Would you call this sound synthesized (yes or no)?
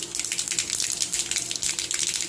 no